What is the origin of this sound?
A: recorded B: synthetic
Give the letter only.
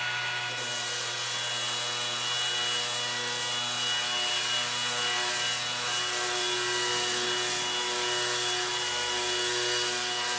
A